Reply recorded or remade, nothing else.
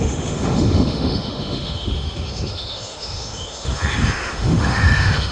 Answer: remade